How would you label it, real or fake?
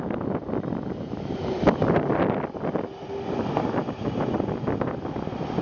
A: real